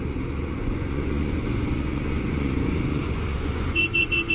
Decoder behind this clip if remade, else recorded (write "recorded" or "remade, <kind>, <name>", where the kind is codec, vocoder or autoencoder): remade, vocoder, Vocos